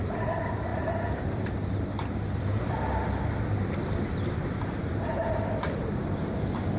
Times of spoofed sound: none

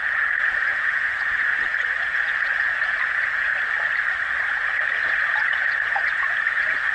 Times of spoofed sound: 0.0-3.5 (vocoder, Vocos); 4.5-6.9